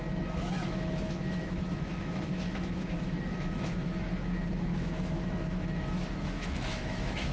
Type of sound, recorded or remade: remade